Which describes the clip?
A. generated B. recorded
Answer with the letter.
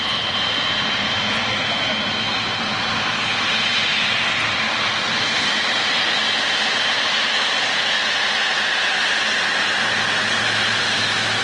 B